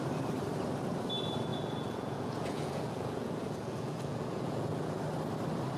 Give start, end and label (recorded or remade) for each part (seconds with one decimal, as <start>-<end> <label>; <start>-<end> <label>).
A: 0.0-1.5 recorded; 1.5-5.0 remade; 5.0-5.8 recorded